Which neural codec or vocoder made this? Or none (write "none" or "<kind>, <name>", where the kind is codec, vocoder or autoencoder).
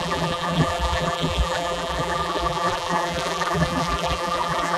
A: vocoder, BigVGAN v2